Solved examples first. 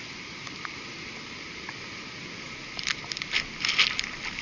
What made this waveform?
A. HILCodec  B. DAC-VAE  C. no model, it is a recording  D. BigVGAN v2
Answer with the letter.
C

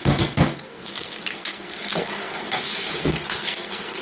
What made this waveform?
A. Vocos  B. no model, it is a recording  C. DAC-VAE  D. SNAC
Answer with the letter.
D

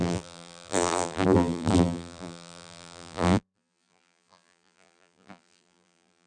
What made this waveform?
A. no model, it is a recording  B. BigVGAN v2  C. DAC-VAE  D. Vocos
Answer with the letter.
B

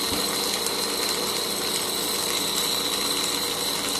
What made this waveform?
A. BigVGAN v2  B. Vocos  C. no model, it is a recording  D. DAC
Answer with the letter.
C